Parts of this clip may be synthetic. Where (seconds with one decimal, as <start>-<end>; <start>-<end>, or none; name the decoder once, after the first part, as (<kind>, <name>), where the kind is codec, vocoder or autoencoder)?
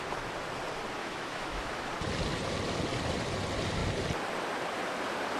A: 1.0-1.9 (autoencoder, DAC-VAE)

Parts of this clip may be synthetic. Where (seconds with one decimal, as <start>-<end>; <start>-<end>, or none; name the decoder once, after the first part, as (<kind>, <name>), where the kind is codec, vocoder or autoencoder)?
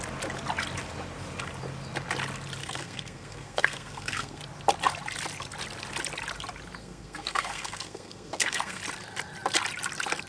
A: 2.6-4.4 (codec, SNAC); 6.8-8.8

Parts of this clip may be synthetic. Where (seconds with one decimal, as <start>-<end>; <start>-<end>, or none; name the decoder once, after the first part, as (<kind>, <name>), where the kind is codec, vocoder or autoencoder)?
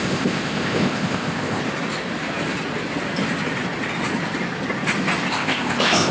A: 0.0-1.6 (codec, ZipCodec); 5.3-6.1